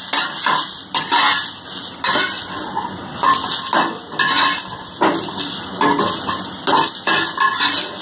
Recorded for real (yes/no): yes